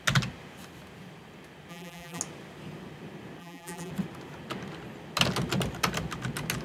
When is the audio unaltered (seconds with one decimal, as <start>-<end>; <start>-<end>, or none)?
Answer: 0.0-1.7; 2.2-3.4; 3.9-6.6